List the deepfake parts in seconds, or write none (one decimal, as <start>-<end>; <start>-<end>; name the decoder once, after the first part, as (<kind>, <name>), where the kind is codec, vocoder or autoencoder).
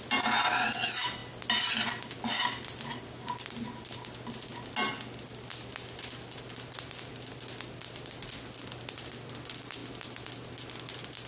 none